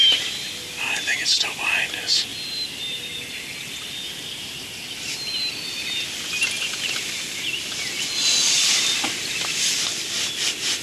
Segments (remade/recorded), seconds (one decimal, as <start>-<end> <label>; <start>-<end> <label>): 0.0-10.8 recorded